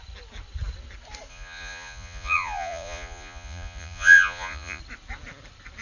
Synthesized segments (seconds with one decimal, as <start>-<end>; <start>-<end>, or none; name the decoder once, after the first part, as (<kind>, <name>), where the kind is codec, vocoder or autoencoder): 1.3-4.8 (vocoder, Vocos)